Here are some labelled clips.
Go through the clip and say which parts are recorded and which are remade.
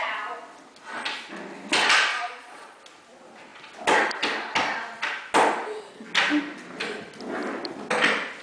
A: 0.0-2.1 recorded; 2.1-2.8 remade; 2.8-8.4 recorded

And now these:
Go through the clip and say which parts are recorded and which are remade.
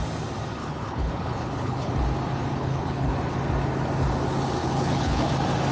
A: 0.0-0.6 recorded; 0.6-1.9 remade; 1.9-2.5 recorded; 2.5-3.1 remade; 3.1-4.6 recorded; 4.6-5.3 remade; 5.3-5.7 recorded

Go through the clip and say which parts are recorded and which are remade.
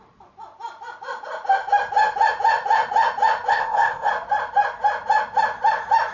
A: 0.0-3.5 recorded; 3.5-4.1 remade; 4.1-6.1 recorded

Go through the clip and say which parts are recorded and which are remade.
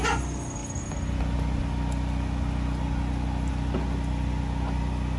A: 0.0-5.2 recorded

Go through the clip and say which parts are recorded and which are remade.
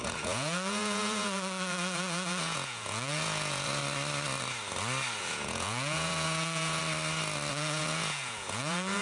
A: 0.0-3.8 remade; 3.8-5.2 recorded; 5.2-6.8 remade; 6.8-7.5 recorded; 7.5-9.0 remade